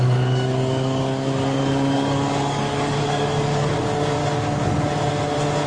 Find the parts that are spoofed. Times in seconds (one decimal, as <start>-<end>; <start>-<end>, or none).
0.0-4.2